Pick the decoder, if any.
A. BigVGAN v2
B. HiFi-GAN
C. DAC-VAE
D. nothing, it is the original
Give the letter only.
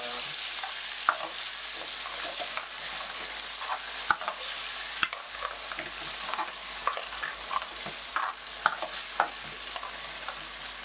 D